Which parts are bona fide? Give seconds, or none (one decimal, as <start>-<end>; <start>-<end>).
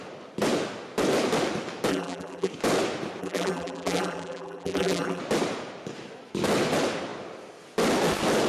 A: 0.0-1.9; 2.5-3.2; 5.2-8.5